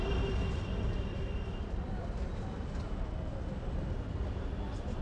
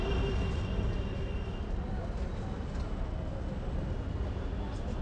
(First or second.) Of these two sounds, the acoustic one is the second